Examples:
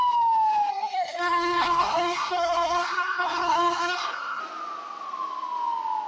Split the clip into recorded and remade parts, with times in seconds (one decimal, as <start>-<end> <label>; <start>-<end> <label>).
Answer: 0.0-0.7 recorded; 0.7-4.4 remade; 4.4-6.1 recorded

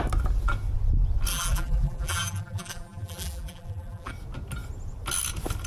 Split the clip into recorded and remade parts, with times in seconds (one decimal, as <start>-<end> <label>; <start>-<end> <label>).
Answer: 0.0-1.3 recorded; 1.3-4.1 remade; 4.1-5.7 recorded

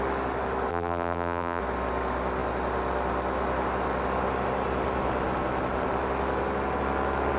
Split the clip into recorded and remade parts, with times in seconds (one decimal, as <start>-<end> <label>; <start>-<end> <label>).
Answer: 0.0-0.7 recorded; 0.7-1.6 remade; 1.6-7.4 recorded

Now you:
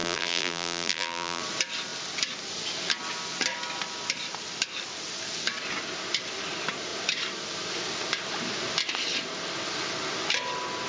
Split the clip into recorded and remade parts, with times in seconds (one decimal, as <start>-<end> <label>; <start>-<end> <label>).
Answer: 0.0-1.4 remade; 1.4-10.9 recorded

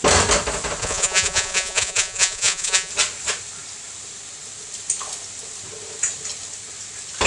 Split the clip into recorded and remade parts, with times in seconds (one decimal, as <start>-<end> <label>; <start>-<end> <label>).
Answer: 0.0-0.8 recorded; 0.8-2.9 remade; 2.9-7.3 recorded